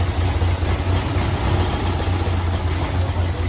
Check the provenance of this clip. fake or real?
real